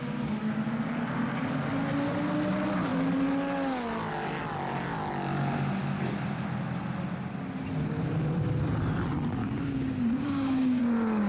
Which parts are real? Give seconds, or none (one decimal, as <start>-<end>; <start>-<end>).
0.0-9.4; 10.8-11.3